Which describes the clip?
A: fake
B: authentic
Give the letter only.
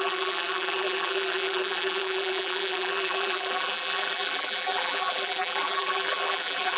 A